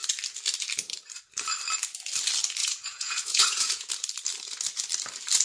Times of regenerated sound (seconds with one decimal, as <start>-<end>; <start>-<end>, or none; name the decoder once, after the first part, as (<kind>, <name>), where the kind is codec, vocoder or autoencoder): 2.6-3.9 (vocoder, Vocos)